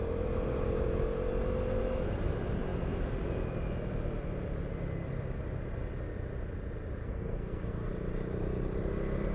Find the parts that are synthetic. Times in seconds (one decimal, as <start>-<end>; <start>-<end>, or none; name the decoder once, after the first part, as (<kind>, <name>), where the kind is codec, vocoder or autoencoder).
7.0-7.9 (codec, SNAC)